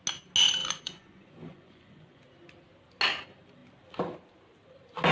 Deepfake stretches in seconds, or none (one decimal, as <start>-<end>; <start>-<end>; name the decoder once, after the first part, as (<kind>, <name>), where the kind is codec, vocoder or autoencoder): 0.6-2.2 (vocoder, Vocos)

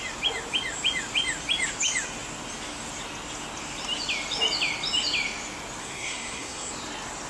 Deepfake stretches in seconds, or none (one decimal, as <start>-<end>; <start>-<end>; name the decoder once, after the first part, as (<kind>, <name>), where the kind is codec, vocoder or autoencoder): 5.8-6.7 (codec, SNAC)

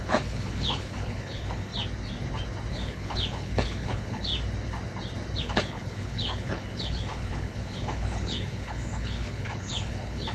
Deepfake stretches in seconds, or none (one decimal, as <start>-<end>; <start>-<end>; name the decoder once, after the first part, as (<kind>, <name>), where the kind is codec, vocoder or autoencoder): 0.0-1.7 (codec, HILCodec); 2.7-4.3; 5.4-10.3

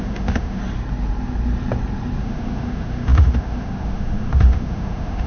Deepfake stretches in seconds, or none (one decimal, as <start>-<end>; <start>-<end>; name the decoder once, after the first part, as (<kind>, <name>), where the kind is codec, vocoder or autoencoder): 0.0-0.6 (autoencoder, DAC-VAE); 2.2-5.3